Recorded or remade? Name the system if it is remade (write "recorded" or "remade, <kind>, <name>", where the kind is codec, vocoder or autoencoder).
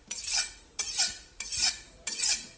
remade, vocoder, Vocos